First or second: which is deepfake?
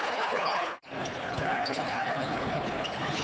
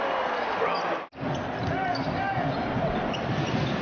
first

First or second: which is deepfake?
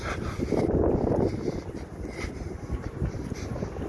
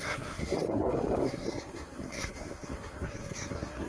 second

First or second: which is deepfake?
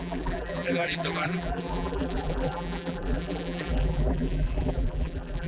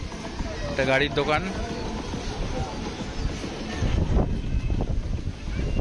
first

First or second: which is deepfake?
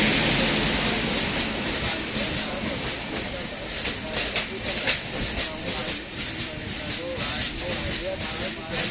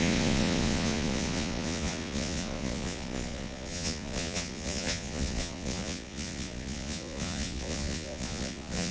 second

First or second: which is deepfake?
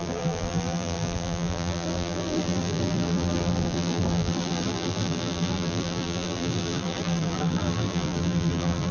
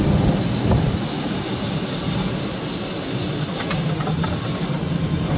first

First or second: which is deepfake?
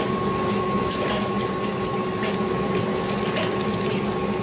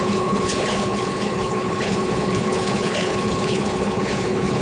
second